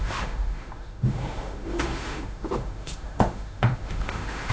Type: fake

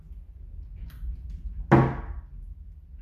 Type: real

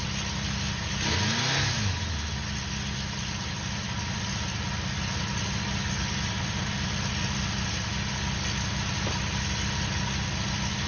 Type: real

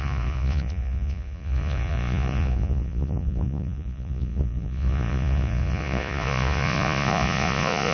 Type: fake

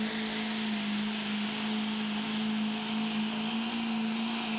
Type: real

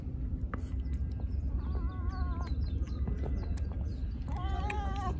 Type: real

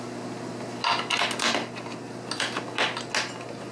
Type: real